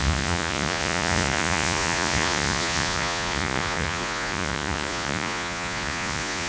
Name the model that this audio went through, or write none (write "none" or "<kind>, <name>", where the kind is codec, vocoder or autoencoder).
vocoder, Vocos